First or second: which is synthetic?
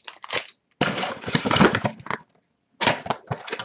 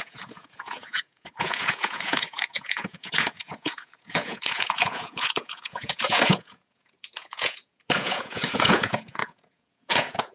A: second